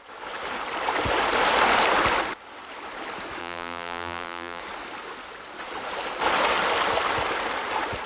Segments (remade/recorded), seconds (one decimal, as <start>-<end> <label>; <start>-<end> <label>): 0.0-3.4 recorded; 3.4-4.6 remade; 4.6-8.1 recorded